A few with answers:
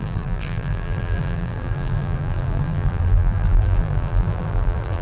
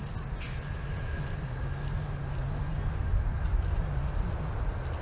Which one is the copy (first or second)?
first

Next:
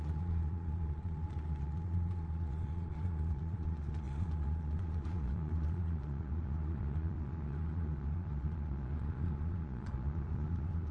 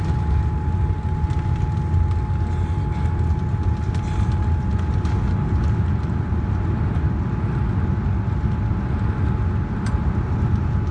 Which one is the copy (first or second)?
first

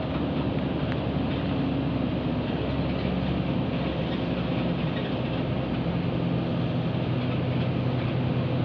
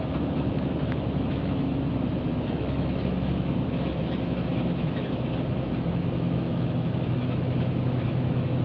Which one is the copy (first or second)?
second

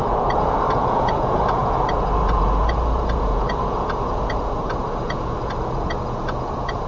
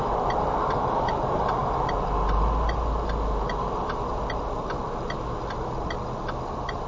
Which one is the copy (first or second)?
first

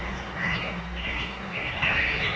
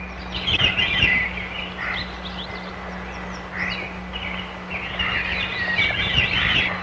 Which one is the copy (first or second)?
first